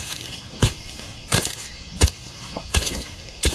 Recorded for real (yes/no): no